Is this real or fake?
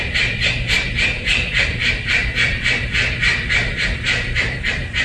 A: fake